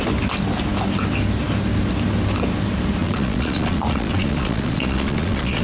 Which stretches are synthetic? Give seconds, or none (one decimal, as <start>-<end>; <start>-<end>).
3.0-5.6